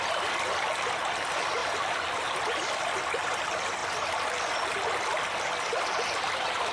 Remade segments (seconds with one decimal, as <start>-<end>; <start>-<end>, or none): none